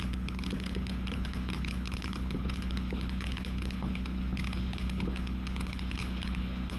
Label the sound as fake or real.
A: fake